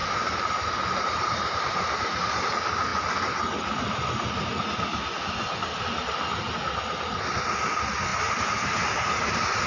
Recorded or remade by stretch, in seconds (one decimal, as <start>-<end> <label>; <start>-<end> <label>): 0.0-2.5 remade; 2.5-9.7 recorded